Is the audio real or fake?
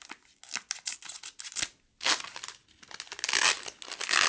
real